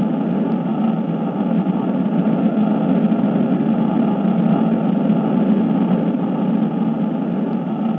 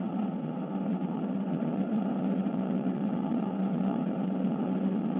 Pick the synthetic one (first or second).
second